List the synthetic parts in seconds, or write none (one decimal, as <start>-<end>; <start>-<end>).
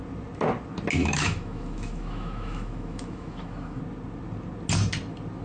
1.0-3.8